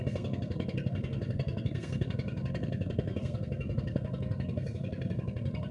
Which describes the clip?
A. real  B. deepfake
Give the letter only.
B